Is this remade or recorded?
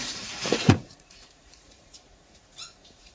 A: remade